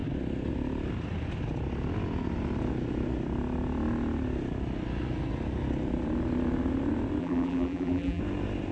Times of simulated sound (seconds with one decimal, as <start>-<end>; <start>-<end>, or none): 7.2-8.2